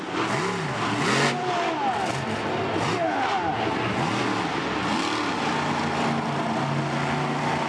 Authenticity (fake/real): real